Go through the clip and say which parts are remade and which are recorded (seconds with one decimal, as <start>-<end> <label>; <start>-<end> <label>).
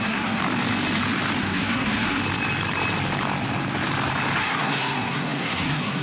0.0-0.4 remade; 0.4-1.4 recorded; 1.4-2.2 remade; 2.2-4.4 recorded; 4.4-6.0 remade